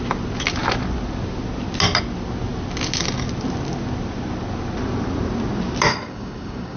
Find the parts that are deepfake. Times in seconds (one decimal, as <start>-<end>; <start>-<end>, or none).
5.9-6.8